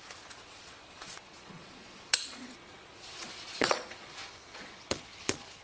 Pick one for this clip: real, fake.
fake